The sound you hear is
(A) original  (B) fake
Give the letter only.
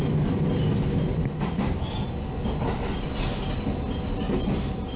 A